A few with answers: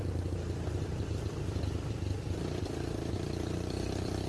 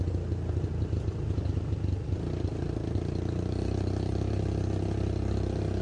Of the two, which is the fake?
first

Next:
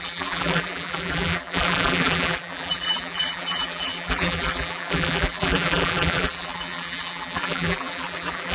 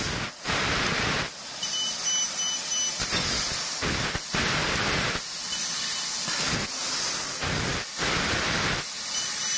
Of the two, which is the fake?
first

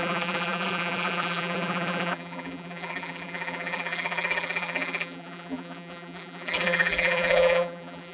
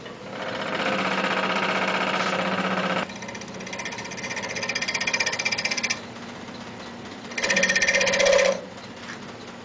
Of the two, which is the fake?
first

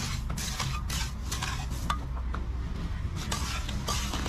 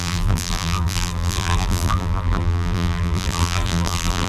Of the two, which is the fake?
second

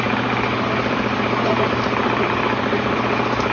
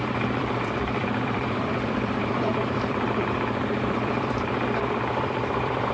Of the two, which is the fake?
second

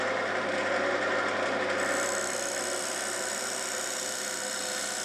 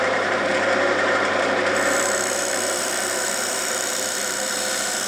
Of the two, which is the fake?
second